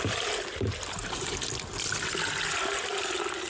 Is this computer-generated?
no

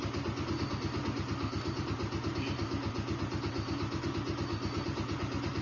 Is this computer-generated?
no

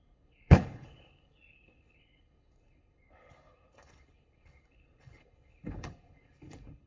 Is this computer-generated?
yes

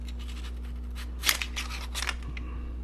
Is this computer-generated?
no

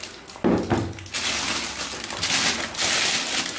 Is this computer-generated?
no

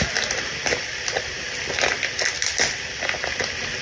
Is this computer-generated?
no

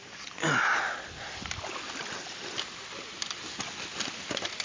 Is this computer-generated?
no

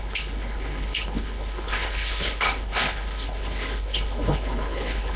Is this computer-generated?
yes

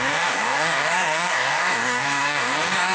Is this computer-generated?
yes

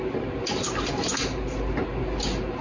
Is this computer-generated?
no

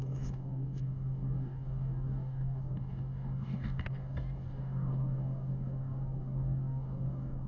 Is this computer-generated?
yes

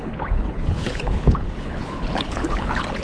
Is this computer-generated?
yes